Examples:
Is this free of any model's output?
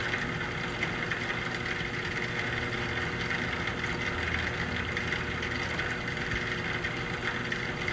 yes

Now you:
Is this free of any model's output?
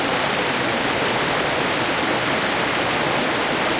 yes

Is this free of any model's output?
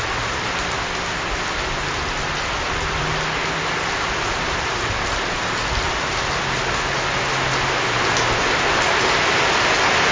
yes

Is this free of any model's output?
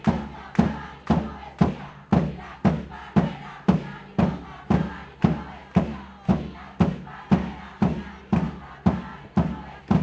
yes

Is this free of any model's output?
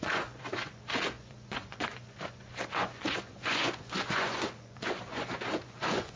no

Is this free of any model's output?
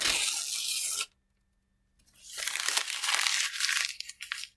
yes